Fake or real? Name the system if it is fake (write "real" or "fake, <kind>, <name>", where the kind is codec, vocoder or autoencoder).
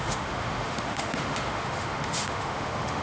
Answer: fake, autoencoder, DAC-VAE